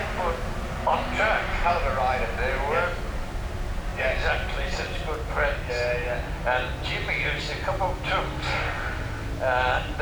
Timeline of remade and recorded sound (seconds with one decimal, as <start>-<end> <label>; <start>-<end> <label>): 0.0-10.0 recorded